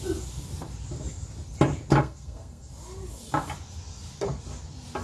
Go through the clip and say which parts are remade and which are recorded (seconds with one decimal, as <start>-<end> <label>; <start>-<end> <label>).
0.0-2.0 recorded; 2.0-2.7 remade; 2.7-5.0 recorded